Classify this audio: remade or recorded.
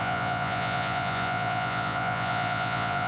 remade